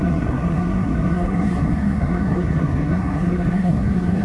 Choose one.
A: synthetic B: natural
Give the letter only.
A